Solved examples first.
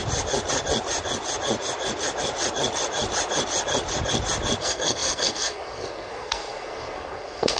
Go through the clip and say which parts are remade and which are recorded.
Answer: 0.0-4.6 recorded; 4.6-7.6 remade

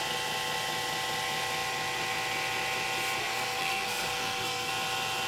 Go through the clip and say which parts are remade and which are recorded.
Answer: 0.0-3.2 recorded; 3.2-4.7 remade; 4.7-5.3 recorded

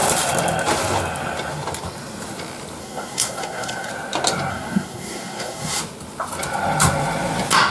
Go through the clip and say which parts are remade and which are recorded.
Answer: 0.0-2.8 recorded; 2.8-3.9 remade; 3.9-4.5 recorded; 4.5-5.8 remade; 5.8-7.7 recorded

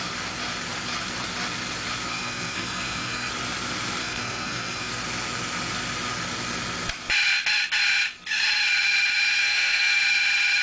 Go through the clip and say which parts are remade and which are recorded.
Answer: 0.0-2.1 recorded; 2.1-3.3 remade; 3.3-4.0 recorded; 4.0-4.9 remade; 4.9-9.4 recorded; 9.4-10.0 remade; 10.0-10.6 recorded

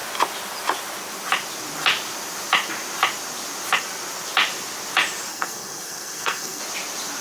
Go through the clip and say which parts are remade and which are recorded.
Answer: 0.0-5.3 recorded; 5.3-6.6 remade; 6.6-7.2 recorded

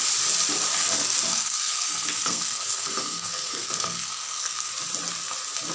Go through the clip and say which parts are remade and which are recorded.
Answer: 0.0-1.3 recorded; 1.3-4.7 remade; 4.7-5.7 recorded

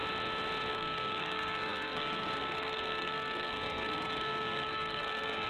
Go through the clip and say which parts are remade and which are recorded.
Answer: 0.0-0.7 recorded; 0.7-5.5 remade

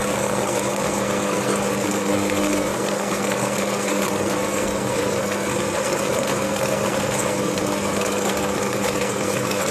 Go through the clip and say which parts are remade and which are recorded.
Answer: 0.0-9.7 remade